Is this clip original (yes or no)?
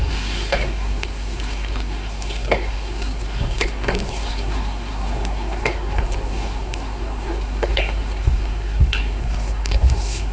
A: no